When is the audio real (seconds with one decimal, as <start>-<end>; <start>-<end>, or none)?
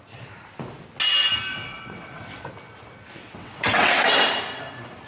0.0-1.5; 2.5-3.2; 3.9-5.1